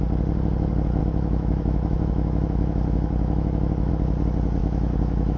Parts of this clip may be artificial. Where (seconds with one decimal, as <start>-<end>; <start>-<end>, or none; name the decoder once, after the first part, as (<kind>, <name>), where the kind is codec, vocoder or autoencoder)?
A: 1.0-3.9 (autoencoder, DAC-VAE); 4.6-5.4